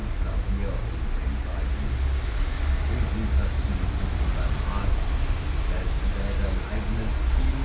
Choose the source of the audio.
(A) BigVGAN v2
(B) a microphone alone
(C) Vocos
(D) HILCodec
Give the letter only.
B